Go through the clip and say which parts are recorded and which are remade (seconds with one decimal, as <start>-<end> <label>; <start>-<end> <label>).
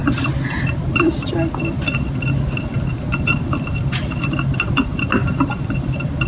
0.0-6.3 recorded